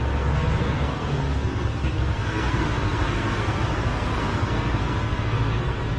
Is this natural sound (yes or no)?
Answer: no